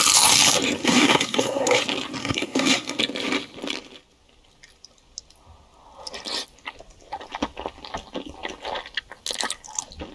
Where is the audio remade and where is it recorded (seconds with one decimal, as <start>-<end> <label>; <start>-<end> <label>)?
0.0-0.8 recorded; 0.8-1.8 remade; 1.8-2.2 recorded; 2.2-3.0 remade; 3.0-10.1 recorded